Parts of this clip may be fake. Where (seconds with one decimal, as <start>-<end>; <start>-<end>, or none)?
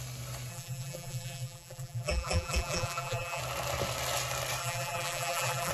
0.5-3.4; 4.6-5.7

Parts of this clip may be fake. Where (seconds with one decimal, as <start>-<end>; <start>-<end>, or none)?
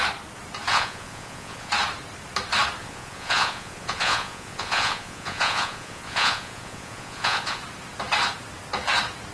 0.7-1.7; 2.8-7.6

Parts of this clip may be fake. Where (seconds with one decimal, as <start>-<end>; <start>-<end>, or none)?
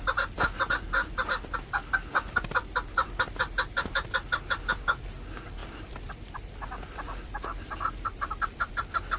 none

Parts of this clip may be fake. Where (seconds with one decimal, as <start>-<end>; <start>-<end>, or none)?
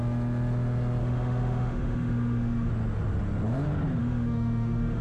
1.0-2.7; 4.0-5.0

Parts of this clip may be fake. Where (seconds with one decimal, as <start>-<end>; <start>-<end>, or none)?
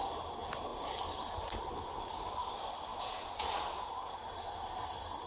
2.9-3.9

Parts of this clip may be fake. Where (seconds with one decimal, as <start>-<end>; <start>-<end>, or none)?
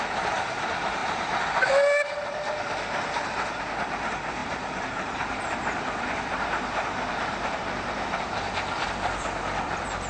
0.0-1.0; 3.6-10.1